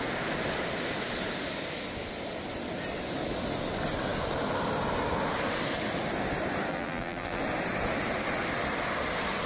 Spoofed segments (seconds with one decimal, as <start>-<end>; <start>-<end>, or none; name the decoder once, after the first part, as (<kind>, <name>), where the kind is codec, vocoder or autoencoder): 6.7-7.4 (vocoder, BigVGAN v2)